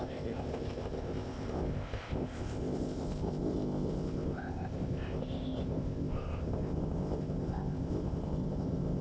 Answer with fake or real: fake